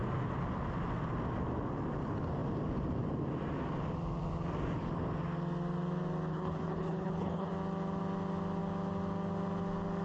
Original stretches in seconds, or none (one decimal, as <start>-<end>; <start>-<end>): 0.0-6.3; 7.5-10.0